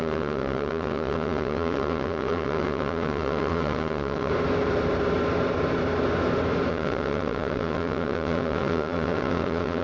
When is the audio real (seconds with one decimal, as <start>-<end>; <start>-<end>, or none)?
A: 4.3-6.7